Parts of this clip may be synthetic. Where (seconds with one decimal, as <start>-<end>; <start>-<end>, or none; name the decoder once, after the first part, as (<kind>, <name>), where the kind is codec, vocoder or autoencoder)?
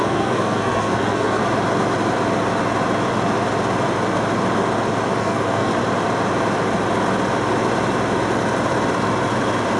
0.0-1.4 (codec, SNAC); 5.2-5.7